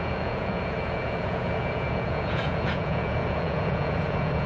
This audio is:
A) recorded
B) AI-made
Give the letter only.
B